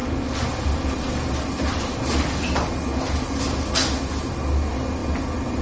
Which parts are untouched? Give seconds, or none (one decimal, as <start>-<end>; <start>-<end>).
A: 0.0-5.6